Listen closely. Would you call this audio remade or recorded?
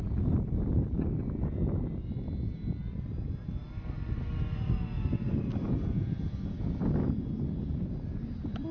recorded